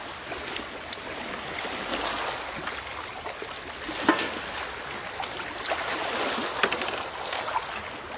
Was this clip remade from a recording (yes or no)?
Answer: no